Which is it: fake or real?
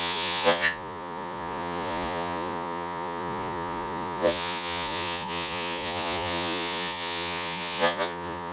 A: fake